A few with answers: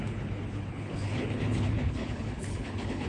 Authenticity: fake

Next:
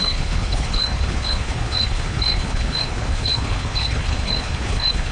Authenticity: fake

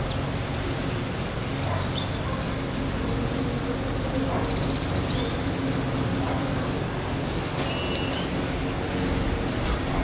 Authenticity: real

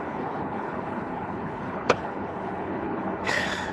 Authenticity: fake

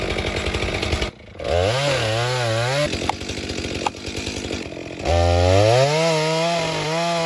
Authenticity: real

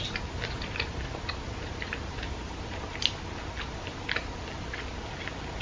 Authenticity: real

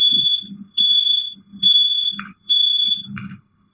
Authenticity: fake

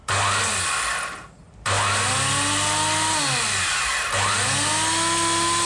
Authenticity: real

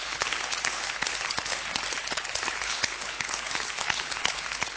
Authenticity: fake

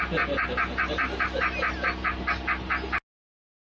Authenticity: real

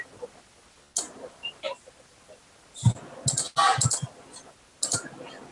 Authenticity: real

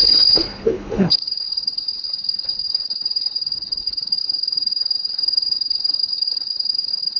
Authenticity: fake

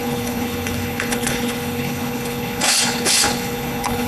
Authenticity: fake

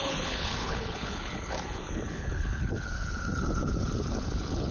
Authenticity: fake